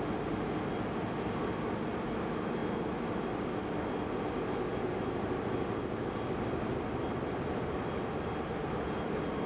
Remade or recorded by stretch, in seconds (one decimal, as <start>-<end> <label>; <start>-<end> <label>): 0.0-9.5 recorded